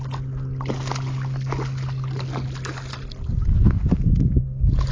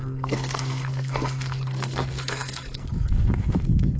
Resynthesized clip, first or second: second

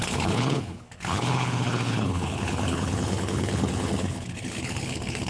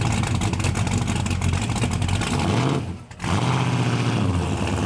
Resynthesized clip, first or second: first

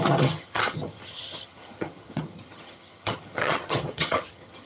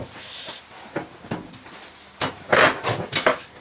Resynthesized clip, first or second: first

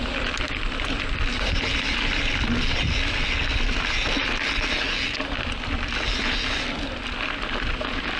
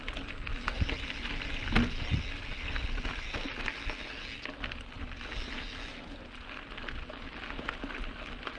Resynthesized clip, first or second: first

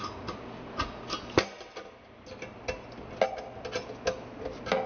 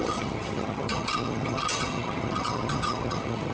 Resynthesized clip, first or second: second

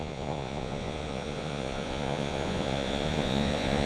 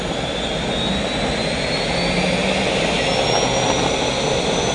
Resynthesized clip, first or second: first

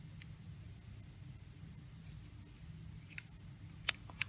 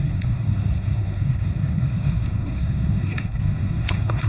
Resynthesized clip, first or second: second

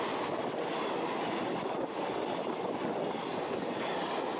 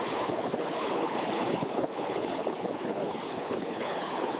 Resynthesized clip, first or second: second